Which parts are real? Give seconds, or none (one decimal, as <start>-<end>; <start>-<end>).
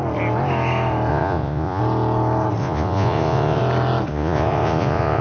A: 0.0-1.1; 1.8-2.6; 3.6-4.1